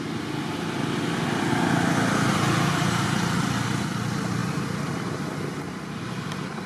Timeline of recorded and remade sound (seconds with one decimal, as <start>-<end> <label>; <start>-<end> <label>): 0.0-6.7 recorded